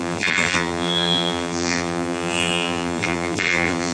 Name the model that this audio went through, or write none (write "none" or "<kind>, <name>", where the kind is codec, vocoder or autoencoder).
vocoder, BigVGAN v2